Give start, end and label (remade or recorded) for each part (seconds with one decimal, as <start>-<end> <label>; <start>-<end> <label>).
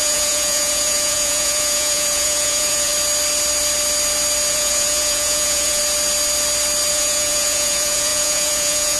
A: 0.0-2.9 remade; 2.9-4.5 recorded; 4.5-5.8 remade; 5.8-6.9 recorded; 6.9-9.0 remade